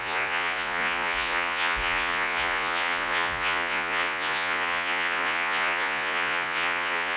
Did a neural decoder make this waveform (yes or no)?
yes